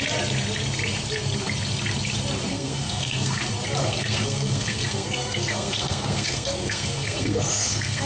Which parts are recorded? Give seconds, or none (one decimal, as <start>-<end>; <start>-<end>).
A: 0.0-2.5; 3.4-3.8